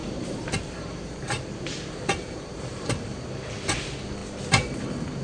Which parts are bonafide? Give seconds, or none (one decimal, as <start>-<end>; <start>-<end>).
3.1-5.2